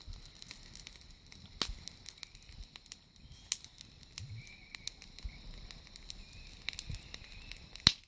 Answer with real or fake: real